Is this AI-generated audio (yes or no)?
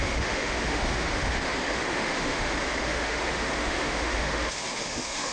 yes